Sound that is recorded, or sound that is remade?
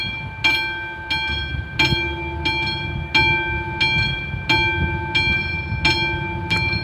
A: recorded